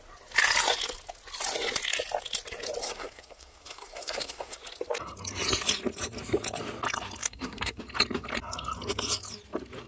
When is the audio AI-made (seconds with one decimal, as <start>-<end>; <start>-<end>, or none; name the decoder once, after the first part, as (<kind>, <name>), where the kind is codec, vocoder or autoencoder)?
2.8-4.6 (codec, SNAC); 7.2-7.8

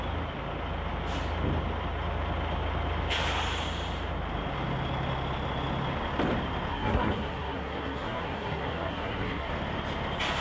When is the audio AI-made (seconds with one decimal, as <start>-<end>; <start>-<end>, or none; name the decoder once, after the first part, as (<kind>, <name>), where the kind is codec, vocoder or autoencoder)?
6.7-9.5 (codec, SNAC)

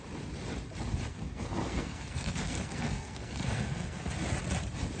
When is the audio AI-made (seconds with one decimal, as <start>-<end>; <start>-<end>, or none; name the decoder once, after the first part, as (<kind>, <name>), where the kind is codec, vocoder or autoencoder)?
1.1-4.1 (codec, SNAC)